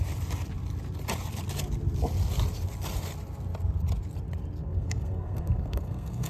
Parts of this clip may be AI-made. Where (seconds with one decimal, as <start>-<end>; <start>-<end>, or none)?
4.6-6.3

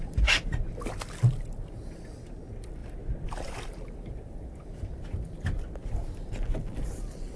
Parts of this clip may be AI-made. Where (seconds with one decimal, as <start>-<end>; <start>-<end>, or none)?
none